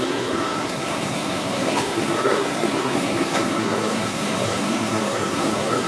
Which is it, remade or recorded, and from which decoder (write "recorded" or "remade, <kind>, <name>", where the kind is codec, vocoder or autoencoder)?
remade, codec, SNAC